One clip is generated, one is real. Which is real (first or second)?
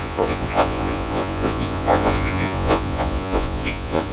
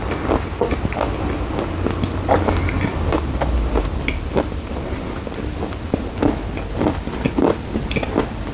second